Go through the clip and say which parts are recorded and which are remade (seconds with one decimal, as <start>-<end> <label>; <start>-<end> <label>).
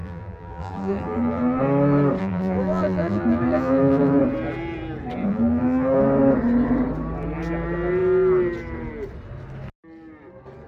0.0-1.6 remade; 1.6-2.2 recorded; 2.2-4.2 remade; 4.2-5.3 recorded; 5.3-6.0 remade; 6.0-10.7 recorded